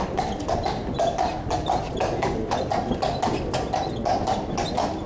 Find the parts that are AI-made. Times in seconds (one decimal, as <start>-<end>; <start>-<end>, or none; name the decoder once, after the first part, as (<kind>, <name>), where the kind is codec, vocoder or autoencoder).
none